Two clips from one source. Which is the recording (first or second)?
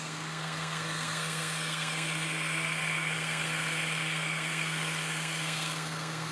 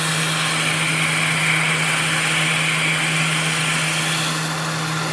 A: second